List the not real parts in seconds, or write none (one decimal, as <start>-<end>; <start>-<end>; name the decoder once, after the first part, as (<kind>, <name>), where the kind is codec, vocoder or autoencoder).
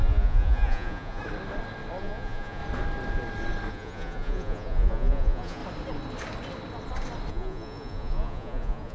0.0-1.2 (vocoder, Vocos); 2.0-2.6; 3.7-5.6; 7.3-8.9